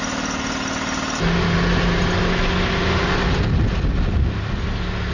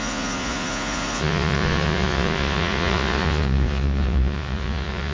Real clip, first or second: first